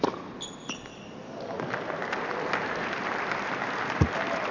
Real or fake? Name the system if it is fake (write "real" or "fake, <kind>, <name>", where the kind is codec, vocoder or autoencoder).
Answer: real